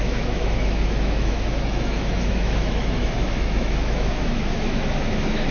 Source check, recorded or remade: remade